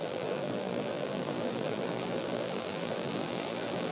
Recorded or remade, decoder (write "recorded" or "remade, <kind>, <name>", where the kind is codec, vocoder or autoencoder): remade, vocoder, BigVGAN v2